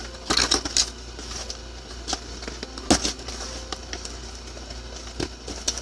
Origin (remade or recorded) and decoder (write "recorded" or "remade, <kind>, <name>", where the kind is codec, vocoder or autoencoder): recorded